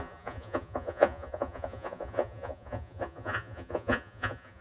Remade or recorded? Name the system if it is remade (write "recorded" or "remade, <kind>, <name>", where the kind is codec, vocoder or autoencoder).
remade, vocoder, Vocos